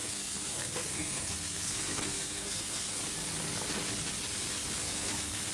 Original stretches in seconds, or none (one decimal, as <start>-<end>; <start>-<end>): 3.0-4.8